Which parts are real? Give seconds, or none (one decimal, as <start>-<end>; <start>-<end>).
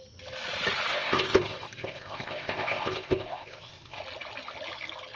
0.0-0.9; 4.0-5.2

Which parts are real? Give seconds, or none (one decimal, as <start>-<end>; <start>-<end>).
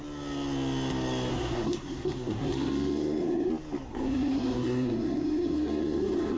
0.0-1.3; 3.5-3.9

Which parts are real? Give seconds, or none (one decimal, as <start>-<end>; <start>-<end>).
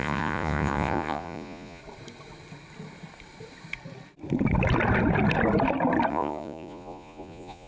1.8-6.1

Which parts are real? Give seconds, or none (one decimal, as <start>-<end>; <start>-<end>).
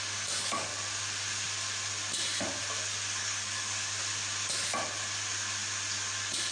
0.7-3.2; 4.0-6.5